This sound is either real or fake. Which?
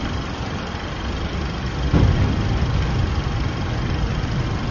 real